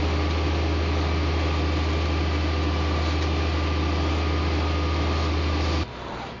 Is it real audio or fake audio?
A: real